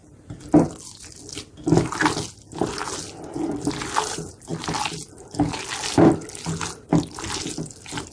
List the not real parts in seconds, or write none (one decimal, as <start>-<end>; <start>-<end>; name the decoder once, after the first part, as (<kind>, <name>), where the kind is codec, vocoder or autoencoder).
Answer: none